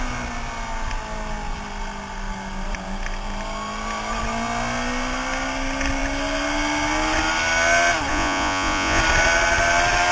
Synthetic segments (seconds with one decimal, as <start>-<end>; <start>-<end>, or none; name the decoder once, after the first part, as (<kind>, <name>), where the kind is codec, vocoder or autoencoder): 8.1-9.0 (vocoder, Vocos)